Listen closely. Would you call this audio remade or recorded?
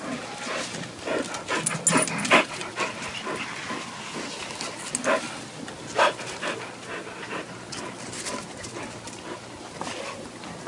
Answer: recorded